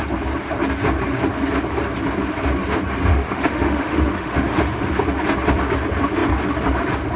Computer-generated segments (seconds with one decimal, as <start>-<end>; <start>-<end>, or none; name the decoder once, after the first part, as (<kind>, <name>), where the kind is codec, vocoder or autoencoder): 3.1-4.9 (autoencoder, DAC-VAE)